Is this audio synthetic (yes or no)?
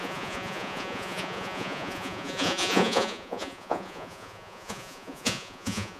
yes